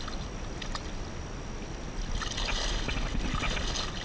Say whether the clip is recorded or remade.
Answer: recorded